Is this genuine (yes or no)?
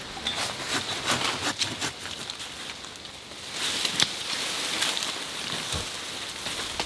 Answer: yes